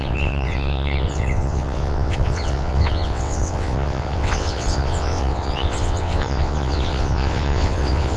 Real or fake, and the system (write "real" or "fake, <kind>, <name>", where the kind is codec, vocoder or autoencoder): fake, vocoder, WaveNeXt